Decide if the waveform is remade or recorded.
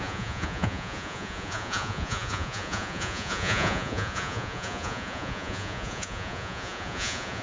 remade